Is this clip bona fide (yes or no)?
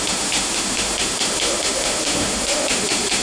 no